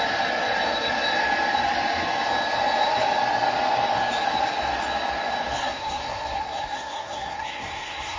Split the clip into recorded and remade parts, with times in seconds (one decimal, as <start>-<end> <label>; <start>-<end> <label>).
0.0-5.6 recorded; 5.6-8.2 remade

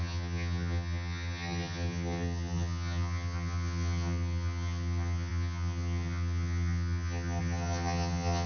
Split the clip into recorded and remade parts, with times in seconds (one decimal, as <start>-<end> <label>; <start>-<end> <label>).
0.0-8.5 remade